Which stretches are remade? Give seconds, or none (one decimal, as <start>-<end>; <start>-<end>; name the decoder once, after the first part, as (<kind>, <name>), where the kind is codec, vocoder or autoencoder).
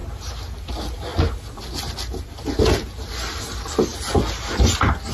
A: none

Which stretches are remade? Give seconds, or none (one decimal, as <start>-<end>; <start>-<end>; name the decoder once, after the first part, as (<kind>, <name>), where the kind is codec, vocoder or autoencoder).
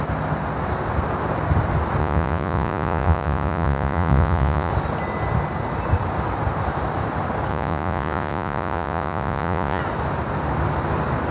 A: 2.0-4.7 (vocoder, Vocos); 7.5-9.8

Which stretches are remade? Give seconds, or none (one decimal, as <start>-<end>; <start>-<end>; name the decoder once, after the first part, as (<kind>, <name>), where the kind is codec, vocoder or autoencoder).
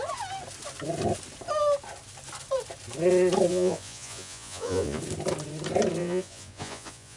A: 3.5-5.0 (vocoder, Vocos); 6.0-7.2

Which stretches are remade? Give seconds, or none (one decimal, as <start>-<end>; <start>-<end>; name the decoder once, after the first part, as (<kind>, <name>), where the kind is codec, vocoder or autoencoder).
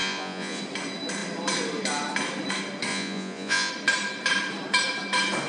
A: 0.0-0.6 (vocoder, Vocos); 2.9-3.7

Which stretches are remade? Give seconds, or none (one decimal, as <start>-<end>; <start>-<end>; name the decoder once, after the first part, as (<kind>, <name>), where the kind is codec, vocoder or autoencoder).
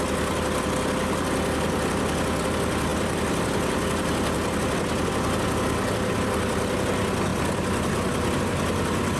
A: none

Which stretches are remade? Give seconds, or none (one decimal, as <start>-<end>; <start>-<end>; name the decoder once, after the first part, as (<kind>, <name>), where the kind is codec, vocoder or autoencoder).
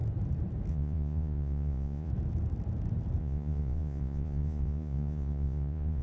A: 0.7-2.1 (vocoder, Vocos); 3.2-6.0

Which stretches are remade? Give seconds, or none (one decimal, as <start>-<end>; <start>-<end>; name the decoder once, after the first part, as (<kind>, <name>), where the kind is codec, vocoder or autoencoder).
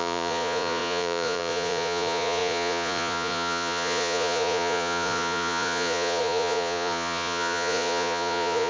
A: 0.0-8.7 (vocoder, Vocos)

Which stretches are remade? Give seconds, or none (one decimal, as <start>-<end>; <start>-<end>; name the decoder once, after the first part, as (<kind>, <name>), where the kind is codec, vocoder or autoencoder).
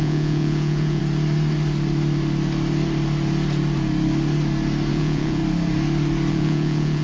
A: 0.0-1.0 (vocoder, Vocos); 4.9-5.4; 6.3-7.0